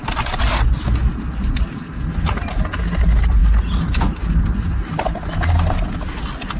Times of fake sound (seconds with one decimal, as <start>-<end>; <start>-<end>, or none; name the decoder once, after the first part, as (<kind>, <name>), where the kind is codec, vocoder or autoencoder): none